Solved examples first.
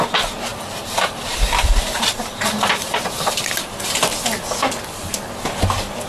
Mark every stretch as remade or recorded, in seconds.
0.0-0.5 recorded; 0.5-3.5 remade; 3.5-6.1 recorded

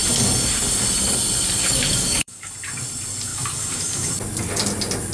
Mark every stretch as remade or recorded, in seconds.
0.0-1.6 recorded; 1.6-2.5 remade; 2.5-3.3 recorded; 3.3-4.1 remade; 4.1-5.1 recorded